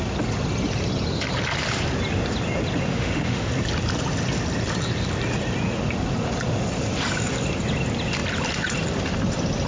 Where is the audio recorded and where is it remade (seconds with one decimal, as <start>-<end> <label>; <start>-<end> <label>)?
0.0-2.9 recorded; 2.9-3.5 remade; 3.5-9.7 recorded